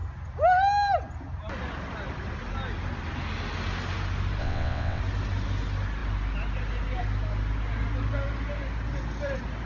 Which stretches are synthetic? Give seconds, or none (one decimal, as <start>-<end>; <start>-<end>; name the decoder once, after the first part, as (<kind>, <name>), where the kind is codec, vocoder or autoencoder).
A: 4.4-5.0 (vocoder, WaveNeXt)